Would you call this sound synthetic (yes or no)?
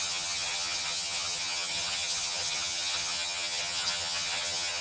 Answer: yes